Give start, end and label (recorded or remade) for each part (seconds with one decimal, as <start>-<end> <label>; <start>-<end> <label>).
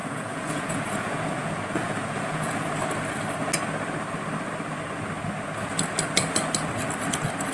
0.0-2.7 remade; 2.7-7.5 recorded